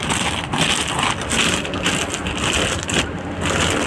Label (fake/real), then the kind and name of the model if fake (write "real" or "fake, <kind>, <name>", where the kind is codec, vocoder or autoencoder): real